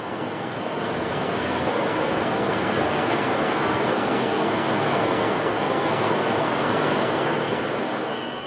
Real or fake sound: fake